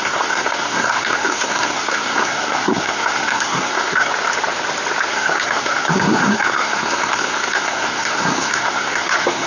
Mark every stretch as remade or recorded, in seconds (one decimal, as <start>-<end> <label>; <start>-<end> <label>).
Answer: 0.0-4.1 remade; 4.1-5.1 recorded; 5.1-9.5 remade